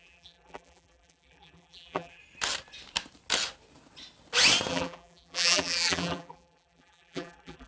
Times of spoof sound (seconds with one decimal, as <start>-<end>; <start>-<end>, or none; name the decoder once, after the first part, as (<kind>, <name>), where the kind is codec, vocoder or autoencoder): 0.0-2.2 (vocoder, BigVGAN v2); 4.7-7.7